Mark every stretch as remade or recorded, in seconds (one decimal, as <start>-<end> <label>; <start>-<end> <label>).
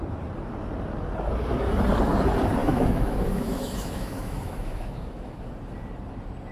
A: 0.0-2.6 recorded; 2.6-5.5 remade; 5.5-6.5 recorded